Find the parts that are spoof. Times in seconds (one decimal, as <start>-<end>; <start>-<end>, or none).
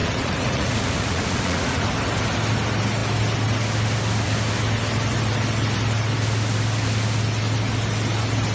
0.0-1.8